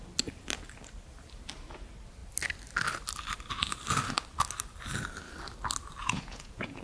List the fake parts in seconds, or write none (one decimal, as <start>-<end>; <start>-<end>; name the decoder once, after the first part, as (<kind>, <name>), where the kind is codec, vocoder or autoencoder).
6.0-6.8 (vocoder, Vocos)